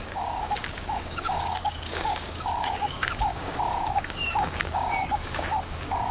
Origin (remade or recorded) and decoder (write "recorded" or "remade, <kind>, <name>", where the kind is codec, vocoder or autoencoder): remade, codec, DAC